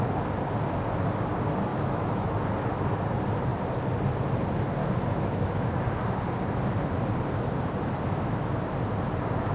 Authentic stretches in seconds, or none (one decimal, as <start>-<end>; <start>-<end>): 0.0-1.7; 2.4-4.8; 5.7-9.5